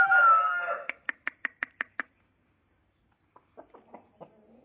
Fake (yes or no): no